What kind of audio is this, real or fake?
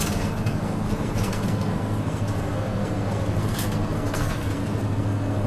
fake